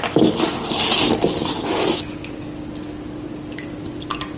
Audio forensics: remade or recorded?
recorded